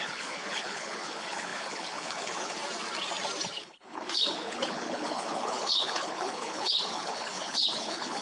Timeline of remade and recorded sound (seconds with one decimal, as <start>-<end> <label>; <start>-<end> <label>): 0.0-2.6 remade; 2.6-3.6 recorded; 3.6-8.2 remade